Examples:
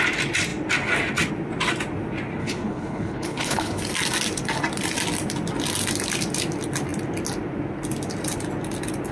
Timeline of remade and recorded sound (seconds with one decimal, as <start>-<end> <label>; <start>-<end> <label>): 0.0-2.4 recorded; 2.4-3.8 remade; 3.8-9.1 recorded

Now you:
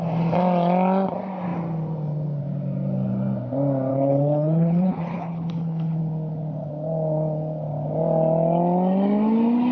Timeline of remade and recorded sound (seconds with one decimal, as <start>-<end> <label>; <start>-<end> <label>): 0.0-3.9 recorded; 3.9-6.0 remade; 6.0-9.7 recorded

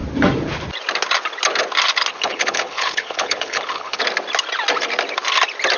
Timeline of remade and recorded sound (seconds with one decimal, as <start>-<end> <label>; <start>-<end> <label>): 0.0-2.1 recorded; 2.1-4.0 remade; 4.0-5.8 recorded

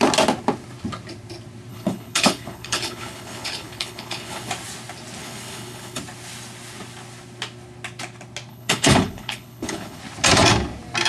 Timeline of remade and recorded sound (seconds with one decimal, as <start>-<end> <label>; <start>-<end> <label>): 0.0-1.7 recorded; 1.7-4.5 remade; 4.5-5.2 recorded; 5.2-6.0 remade; 6.0-8.5 recorded; 8.5-10.0 remade; 10.0-11.1 recorded